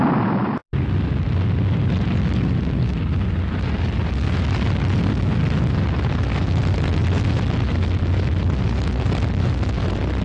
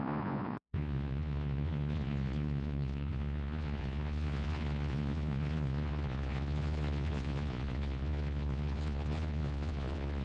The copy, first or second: second